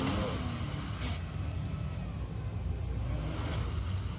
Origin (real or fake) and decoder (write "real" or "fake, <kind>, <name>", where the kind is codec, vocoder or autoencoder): real